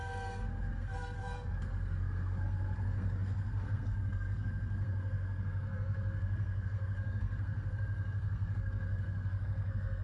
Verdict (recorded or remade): remade